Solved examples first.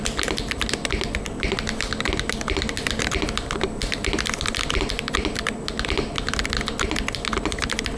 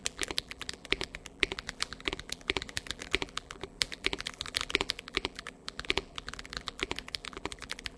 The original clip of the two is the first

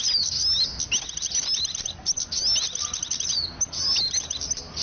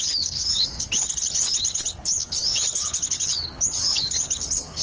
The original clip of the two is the first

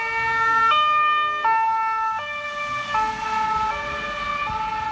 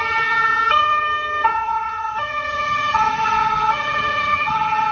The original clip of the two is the first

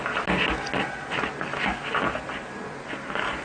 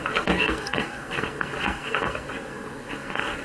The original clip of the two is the first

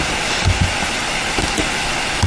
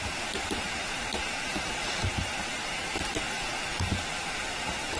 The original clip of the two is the first